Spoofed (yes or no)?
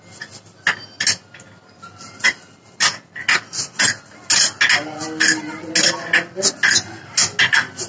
no